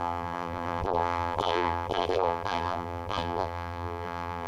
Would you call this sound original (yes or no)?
no